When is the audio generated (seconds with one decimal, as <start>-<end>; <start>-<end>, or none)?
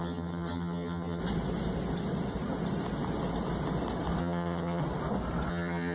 0.0-1.2; 4.2-4.8; 5.5-5.9